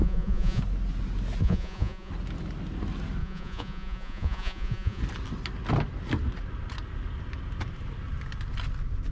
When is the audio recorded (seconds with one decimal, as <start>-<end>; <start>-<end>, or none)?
0.6-1.4; 2.1-3.2; 5.0-9.1